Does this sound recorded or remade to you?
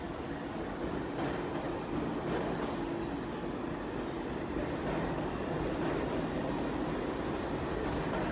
recorded